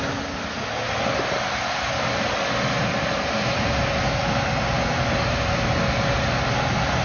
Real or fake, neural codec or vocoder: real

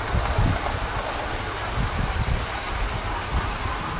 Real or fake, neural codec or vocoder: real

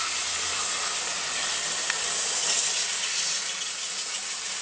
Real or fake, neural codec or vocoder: real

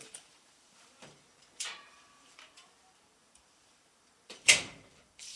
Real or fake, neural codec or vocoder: fake, vocoder, BigVGAN v2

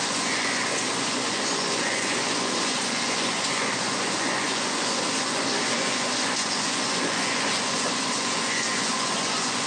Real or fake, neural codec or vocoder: fake, vocoder, Vocos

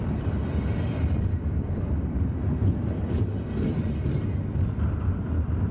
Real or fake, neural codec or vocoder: real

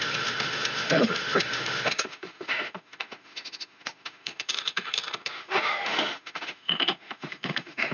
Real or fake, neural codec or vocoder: fake, autoencoder, DAC-VAE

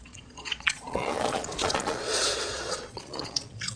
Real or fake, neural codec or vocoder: fake, vocoder, Vocos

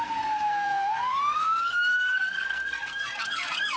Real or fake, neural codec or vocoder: fake, codec, SNAC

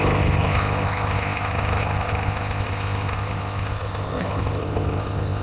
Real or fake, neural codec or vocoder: fake, codec, ZipCodec